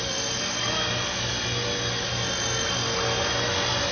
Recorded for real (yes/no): yes